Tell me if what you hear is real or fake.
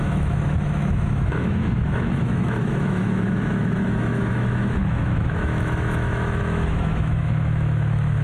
fake